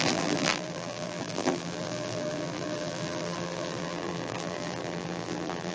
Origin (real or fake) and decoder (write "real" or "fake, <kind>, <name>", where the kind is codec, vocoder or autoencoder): fake, vocoder, BigVGAN v2